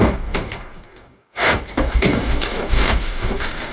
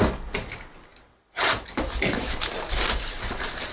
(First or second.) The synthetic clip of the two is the first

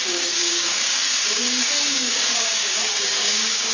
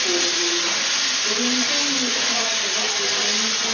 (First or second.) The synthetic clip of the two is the first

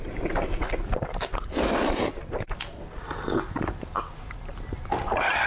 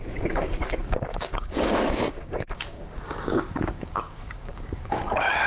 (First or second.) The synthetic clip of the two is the second